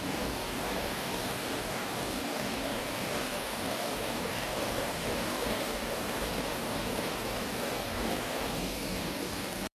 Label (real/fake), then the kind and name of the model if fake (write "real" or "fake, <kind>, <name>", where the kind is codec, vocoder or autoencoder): fake, codec, DAC